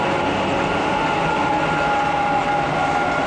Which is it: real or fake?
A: real